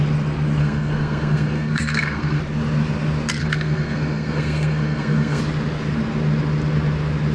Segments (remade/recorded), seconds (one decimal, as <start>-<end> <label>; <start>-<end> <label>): 0.0-0.6 recorded; 0.6-2.4 remade; 2.4-3.4 recorded; 3.4-5.4 remade; 5.4-7.3 recorded